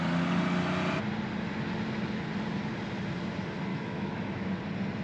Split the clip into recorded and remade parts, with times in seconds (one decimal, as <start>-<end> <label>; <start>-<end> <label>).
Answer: 0.0-3.7 recorded; 3.7-4.6 remade; 4.6-5.0 recorded